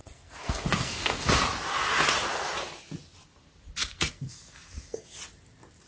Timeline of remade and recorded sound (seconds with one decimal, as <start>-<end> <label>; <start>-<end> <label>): 0.0-1.3 remade; 1.3-3.8 recorded; 3.8-5.2 remade; 5.2-5.9 recorded